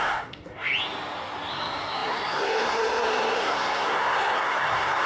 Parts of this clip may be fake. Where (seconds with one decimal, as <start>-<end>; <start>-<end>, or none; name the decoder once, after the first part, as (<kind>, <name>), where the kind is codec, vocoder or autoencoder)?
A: 0.0-0.7 (codec, SNAC); 1.5-5.1

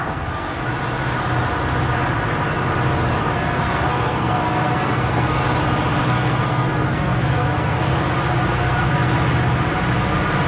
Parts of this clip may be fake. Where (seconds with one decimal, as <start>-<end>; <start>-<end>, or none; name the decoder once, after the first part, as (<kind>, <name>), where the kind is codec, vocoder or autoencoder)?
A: 0.0-0.7 (codec, SNAC); 3.2-5.4; 6.0-7.9; 8.5-9.1

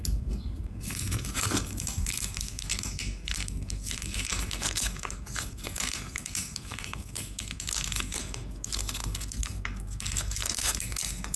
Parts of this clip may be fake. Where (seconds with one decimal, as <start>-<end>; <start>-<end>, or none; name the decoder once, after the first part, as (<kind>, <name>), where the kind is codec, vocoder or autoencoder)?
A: 0.0-11.4 (codec, SNAC)

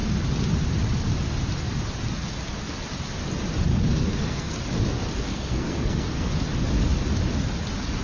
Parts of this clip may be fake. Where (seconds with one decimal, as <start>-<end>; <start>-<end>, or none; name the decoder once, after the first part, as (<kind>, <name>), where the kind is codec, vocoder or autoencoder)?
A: 3.7-4.6 (codec, SNAC); 5.3-6.3

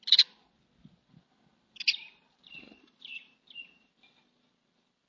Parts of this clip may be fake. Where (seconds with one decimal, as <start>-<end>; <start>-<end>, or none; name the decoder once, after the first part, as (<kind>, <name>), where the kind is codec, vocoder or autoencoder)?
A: none

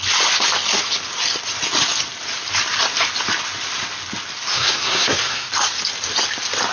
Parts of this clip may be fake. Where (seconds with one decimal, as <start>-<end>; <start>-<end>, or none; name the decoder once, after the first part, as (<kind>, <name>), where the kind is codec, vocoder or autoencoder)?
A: 4.5-5.5 (codec, SNAC)

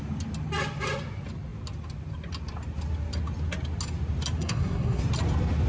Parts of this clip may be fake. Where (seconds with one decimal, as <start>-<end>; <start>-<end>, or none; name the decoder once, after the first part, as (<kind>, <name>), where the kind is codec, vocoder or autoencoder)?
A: 4.4-5.0 (codec, SNAC)